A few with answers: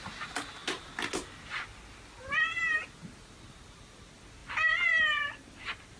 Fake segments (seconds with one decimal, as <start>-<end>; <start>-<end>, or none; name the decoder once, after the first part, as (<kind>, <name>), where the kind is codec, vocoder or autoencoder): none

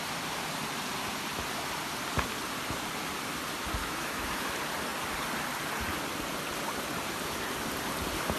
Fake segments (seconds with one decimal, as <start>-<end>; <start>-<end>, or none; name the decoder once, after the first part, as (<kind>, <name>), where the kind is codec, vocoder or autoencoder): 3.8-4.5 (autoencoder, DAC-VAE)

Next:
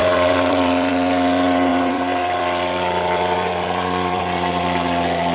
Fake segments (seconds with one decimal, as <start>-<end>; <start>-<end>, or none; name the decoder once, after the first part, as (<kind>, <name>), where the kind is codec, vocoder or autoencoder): 0.0-0.9 (vocoder, BigVGAN v2); 1.7-4.2

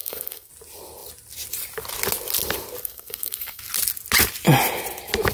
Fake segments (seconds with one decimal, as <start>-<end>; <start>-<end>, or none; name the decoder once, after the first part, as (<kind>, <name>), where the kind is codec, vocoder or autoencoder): 0.0-0.5 (codec, SNAC); 2.8-3.6

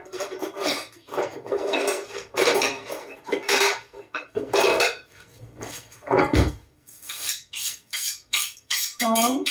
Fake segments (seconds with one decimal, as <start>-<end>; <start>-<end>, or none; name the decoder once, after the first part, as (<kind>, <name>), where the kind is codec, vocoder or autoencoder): 0.0-9.5 (codec, SNAC)

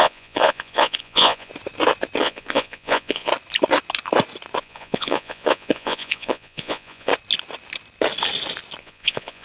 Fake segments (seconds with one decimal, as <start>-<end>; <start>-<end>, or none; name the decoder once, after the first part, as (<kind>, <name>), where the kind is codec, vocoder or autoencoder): 0.0-1.5 (vocoder, Vocos); 2.2-3.3; 4.6-7.1; 8.8-9.4

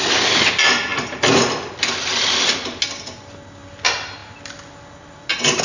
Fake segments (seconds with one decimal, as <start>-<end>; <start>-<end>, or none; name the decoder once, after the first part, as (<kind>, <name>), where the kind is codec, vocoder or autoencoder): none